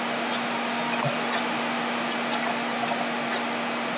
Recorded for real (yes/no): yes